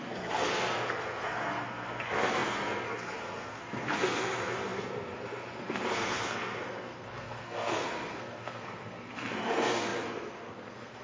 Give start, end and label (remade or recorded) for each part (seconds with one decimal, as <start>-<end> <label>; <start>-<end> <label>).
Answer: 0.0-11.0 remade